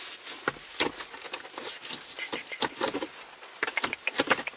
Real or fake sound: real